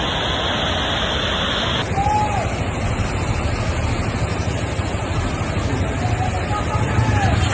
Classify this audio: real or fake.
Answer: real